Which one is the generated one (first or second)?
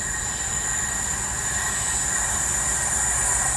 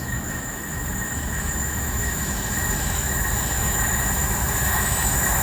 second